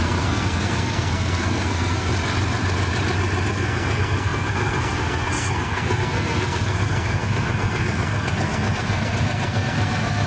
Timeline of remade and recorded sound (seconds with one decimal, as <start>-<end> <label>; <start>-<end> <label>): 0.0-2.1 remade; 2.1-3.5 recorded; 3.5-10.3 remade